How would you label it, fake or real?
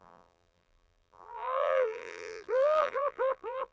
fake